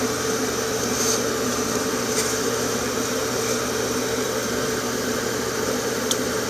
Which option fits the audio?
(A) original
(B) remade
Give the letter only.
B